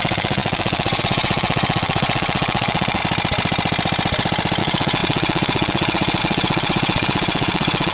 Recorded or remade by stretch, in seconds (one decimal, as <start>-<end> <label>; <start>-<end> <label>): 0.0-3.0 remade; 3.0-4.6 recorded; 4.6-7.9 remade